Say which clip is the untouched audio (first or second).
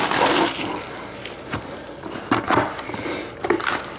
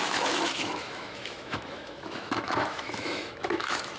first